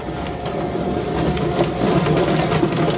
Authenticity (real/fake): real